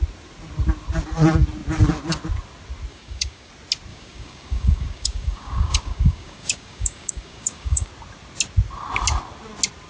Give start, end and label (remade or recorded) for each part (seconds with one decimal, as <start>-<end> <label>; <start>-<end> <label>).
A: 0.0-2.9 recorded; 2.9-3.5 remade; 3.5-3.9 recorded; 3.9-7.9 remade; 7.9-9.9 recorded